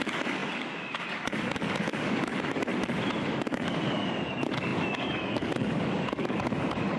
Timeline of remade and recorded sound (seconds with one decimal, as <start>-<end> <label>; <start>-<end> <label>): 0.0-2.7 remade; 2.7-3.2 recorded; 3.2-7.0 remade